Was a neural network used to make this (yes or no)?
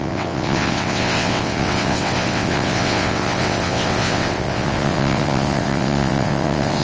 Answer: yes